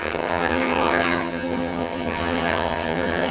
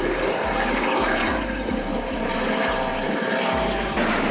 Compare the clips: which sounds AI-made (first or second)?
first